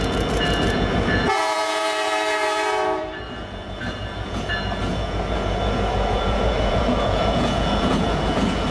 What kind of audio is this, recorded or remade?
remade